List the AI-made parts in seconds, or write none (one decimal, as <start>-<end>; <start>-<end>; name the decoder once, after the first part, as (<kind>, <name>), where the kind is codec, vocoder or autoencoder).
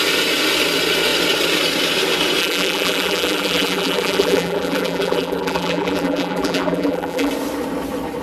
2.4-7.3 (vocoder, BigVGAN v2)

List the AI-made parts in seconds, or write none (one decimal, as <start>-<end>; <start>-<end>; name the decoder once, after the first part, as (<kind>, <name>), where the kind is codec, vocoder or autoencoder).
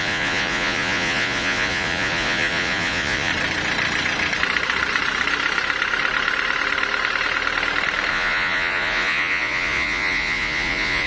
0.0-3.3 (vocoder, Vocos); 8.1-11.1